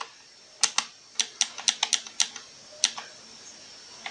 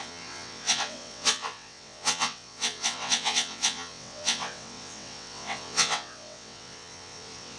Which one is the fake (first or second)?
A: second